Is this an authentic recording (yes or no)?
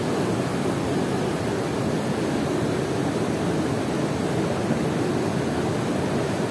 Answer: yes